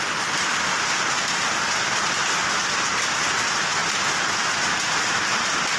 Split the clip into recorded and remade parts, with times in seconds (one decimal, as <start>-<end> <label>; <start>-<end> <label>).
0.0-5.8 recorded